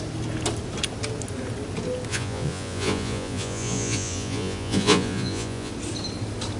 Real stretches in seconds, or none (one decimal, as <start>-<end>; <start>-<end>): 0.0-2.1; 5.7-6.6